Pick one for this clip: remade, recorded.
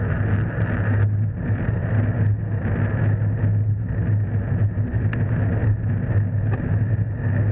recorded